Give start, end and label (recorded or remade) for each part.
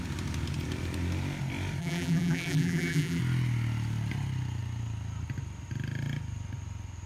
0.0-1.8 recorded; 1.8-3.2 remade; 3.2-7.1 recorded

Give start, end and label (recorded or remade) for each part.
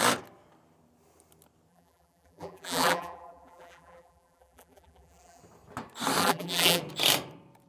0.0-1.7 recorded; 1.7-5.4 remade; 5.4-6.2 recorded; 6.2-6.8 remade; 6.8-7.7 recorded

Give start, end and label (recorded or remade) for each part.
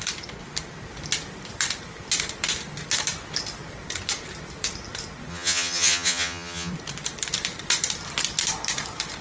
0.0-5.3 recorded; 5.3-6.7 remade; 6.7-9.2 recorded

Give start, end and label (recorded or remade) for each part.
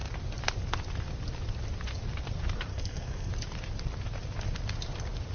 0.0-2.7 recorded; 2.7-3.3 remade; 3.3-5.3 recorded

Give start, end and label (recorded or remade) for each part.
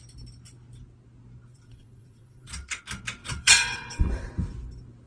0.0-1.5 recorded; 1.5-2.8 remade; 2.8-3.2 recorded; 3.2-4.3 remade; 4.3-5.1 recorded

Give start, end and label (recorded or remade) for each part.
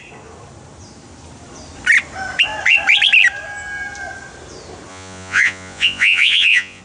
0.0-4.9 recorded; 4.9-6.8 remade